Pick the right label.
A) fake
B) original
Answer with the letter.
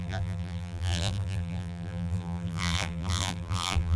A